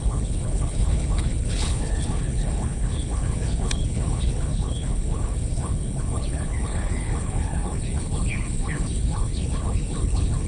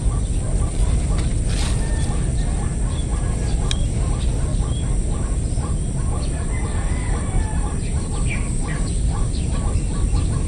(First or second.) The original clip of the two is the second